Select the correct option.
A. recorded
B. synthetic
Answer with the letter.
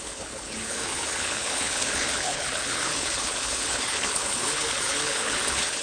B